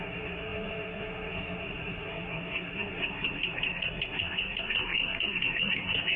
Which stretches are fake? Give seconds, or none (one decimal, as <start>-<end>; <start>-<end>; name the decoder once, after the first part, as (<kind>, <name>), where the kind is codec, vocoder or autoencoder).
0.0-6.2 (codec, SNAC)